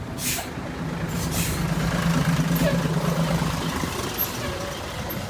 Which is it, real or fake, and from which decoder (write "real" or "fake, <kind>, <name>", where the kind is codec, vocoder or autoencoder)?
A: real